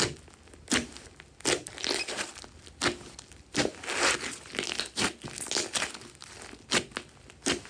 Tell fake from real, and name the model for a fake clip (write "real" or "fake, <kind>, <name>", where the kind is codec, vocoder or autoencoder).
real